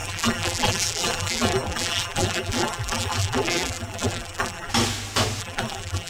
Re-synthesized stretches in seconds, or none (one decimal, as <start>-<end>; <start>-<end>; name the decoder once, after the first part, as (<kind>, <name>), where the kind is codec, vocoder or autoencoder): 0.0-4.7 (vocoder, BigVGAN v2); 5.4-6.1